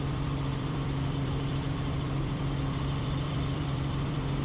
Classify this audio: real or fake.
fake